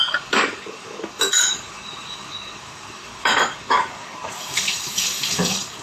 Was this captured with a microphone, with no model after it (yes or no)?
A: no